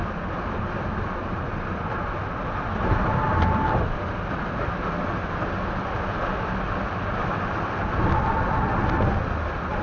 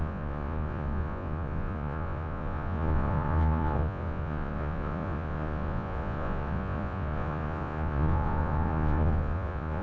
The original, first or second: first